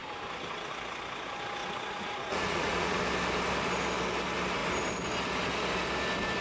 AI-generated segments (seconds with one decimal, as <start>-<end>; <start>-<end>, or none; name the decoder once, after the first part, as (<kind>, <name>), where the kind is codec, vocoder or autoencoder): 1.6-3.0 (vocoder, Vocos)